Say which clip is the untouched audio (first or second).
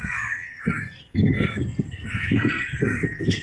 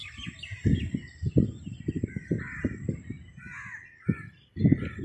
second